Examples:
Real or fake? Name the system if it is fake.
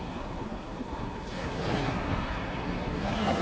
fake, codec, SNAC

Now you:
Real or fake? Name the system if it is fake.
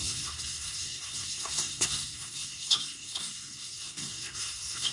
fake, codec, SNAC